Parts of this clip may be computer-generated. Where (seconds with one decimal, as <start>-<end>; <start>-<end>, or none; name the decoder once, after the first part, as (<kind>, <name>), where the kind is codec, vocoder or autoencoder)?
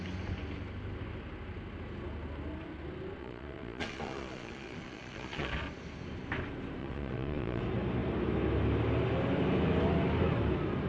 3.2-5.5 (vocoder, Vocos); 6.8-7.6